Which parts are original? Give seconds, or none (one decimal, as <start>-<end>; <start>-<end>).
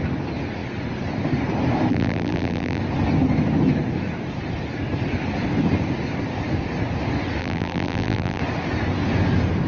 0.0-1.9; 2.8-7.4; 8.4-9.7